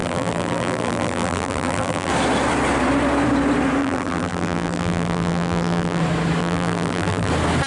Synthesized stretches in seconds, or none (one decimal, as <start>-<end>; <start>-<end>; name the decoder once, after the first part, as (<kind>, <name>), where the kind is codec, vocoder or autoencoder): 0.0-2.1 (vocoder, BigVGAN v2); 3.8-6.0; 6.4-7.3